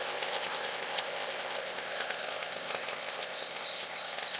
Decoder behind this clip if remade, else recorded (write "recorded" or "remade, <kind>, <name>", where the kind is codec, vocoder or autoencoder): remade, codec, ZipCodec